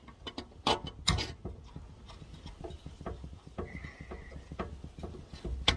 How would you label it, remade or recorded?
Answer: recorded